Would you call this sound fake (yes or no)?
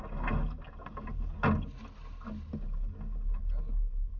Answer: no